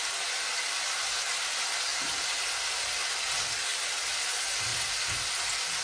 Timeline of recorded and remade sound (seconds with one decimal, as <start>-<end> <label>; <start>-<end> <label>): 0.0-5.8 recorded